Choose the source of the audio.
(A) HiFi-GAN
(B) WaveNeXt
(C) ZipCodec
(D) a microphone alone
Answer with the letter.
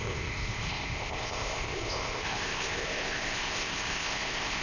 C